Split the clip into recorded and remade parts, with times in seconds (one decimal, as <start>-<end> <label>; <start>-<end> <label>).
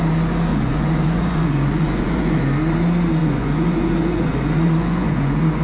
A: 0.0-0.5 recorded; 0.5-2.4 remade; 2.4-3.2 recorded; 3.2-5.6 remade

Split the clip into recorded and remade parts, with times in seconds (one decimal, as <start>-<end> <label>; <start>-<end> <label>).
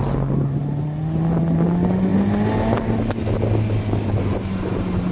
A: 0.0-5.1 recorded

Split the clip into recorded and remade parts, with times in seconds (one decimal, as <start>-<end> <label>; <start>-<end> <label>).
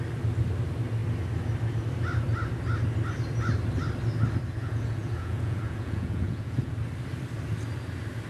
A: 0.0-4.6 recorded; 4.6-6.7 remade; 6.7-8.3 recorded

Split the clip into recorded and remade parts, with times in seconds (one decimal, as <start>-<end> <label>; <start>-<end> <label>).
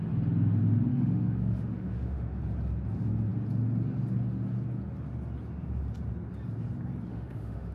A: 0.0-0.9 recorded; 0.9-2.4 remade; 2.4-7.1 recorded; 7.1-7.7 remade